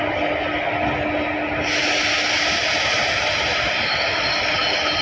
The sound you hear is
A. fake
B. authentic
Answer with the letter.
B